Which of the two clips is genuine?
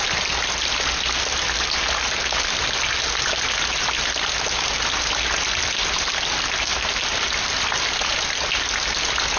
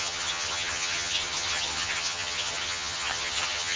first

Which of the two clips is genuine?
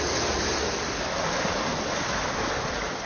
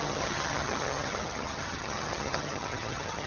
first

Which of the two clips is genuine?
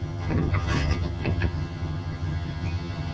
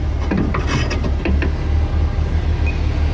second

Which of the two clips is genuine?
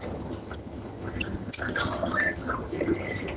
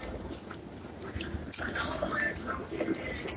second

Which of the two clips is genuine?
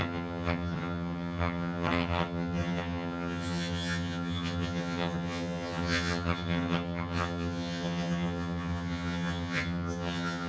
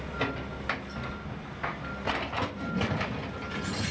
second